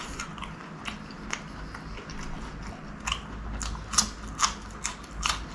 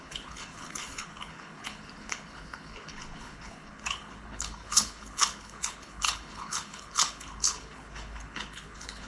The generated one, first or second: second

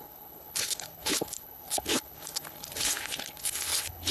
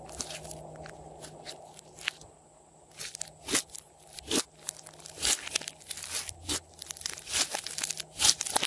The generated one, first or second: first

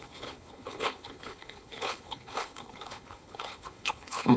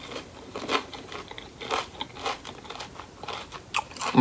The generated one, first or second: first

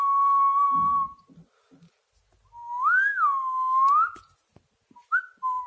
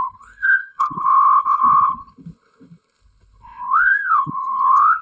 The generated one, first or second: second